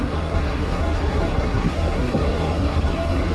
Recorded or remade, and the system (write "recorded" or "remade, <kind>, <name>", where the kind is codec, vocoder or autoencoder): remade, codec, SNAC